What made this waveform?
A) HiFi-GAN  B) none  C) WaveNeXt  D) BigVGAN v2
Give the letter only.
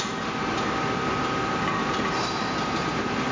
D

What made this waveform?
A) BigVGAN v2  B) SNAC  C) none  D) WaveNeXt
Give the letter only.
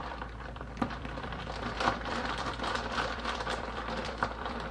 A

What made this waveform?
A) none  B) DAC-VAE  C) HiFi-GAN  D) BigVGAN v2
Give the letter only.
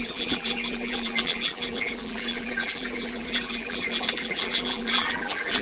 D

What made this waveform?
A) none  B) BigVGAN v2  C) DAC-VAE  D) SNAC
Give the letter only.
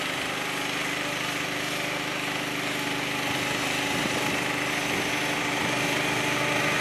A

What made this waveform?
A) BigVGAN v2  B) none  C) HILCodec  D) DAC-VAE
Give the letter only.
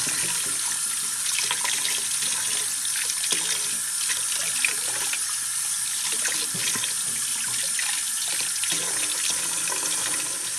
B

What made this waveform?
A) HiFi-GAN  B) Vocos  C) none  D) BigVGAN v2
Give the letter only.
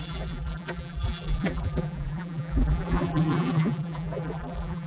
D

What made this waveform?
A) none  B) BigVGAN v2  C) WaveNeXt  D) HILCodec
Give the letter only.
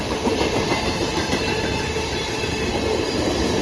B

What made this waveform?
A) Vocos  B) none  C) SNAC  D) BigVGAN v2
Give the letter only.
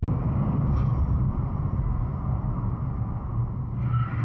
B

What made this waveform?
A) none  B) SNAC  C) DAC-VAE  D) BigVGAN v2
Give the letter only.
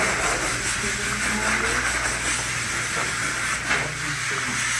A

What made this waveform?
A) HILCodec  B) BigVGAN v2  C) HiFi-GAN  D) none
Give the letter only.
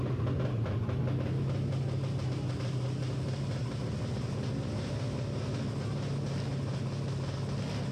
D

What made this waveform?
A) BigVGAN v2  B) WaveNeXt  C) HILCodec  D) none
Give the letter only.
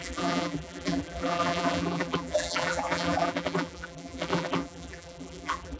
A